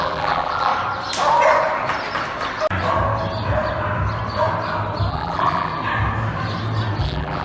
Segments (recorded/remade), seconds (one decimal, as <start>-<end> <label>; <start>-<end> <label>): 0.0-0.7 remade; 0.7-5.1 recorded; 5.1-5.7 remade; 5.7-7.0 recorded; 7.0-7.4 remade